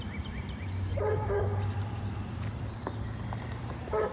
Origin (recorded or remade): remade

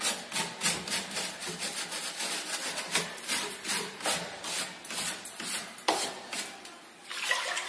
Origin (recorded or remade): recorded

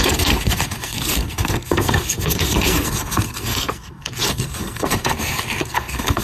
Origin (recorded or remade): remade